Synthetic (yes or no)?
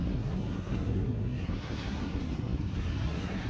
yes